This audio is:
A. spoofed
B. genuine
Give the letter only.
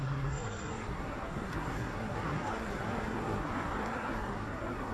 A